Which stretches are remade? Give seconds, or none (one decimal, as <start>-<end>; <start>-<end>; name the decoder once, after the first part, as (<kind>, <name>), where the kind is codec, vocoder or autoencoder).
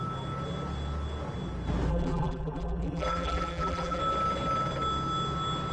1.9-4.0 (vocoder, BigVGAN v2)